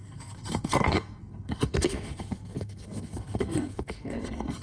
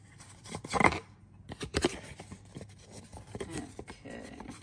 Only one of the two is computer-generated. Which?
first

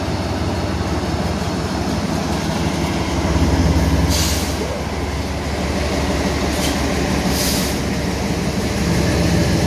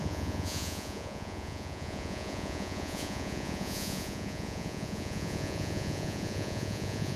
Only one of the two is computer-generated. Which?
second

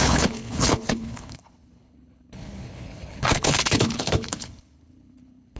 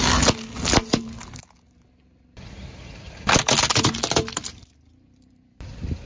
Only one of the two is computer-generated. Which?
first